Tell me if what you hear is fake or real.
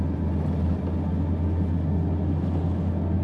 real